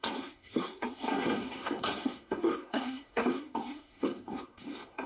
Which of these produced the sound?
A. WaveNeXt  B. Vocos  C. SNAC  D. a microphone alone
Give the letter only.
C